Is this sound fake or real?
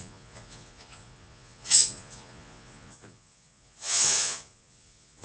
fake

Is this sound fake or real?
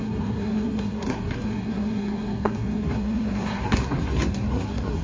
fake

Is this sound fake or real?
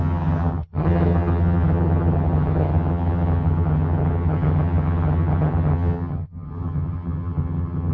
fake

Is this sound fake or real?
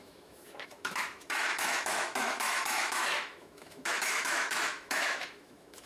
fake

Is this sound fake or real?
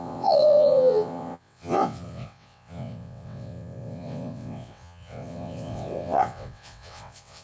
fake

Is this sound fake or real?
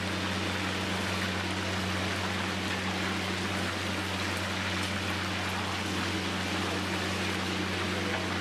real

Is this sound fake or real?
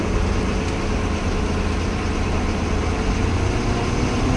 real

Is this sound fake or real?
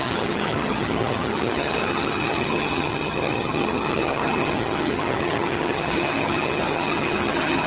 fake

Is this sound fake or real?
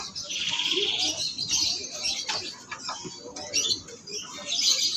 real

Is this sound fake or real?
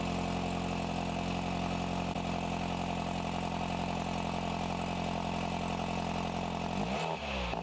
real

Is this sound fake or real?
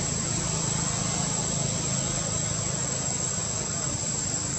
real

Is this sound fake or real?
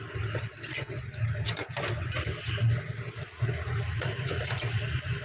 real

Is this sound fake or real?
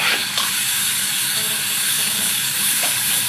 fake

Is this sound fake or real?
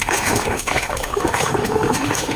fake